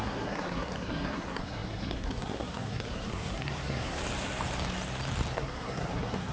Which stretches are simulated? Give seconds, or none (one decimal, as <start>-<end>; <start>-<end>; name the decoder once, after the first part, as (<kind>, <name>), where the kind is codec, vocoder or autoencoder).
0.0-4.0 (codec, SNAC); 5.3-6.3